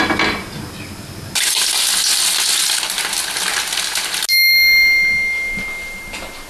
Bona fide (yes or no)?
yes